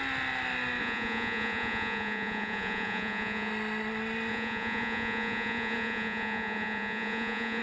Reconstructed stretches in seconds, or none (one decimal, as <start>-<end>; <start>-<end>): 0.8-3.5; 4.3-7.6